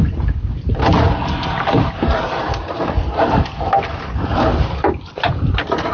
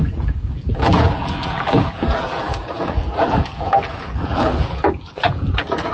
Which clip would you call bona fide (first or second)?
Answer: first